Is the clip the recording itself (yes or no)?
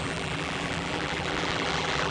no